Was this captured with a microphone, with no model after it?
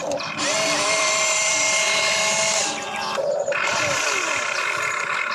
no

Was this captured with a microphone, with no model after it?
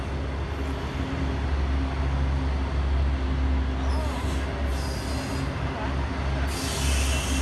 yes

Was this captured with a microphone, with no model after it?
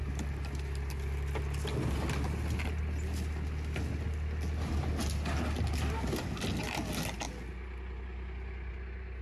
yes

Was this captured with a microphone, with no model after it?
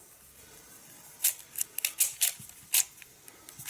yes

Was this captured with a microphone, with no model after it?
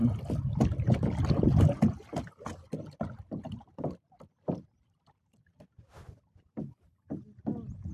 yes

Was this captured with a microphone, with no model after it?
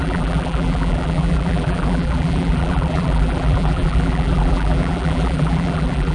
no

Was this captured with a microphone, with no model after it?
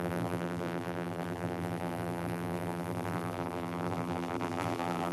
no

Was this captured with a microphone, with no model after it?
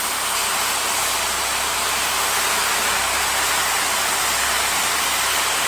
yes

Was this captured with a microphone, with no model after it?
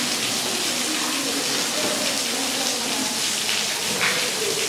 yes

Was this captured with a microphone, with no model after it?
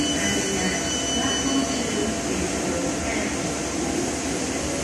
yes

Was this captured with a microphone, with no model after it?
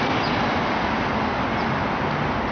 yes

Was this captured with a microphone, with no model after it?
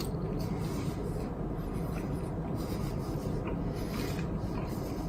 yes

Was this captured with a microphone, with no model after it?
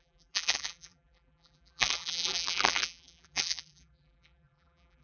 no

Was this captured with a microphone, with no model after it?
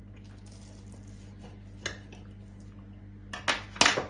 yes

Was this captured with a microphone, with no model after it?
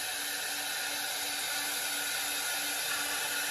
yes